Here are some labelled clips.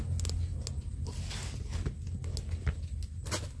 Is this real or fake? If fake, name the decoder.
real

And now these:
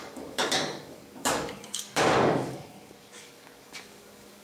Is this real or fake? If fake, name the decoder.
fake, codec, DAC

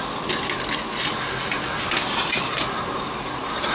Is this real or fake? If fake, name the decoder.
real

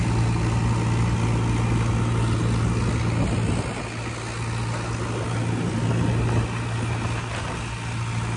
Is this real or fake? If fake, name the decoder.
real